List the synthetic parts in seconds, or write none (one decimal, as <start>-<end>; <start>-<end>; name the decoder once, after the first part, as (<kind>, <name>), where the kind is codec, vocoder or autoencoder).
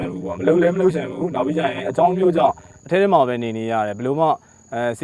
0.0-2.8 (vocoder, BigVGAN v2)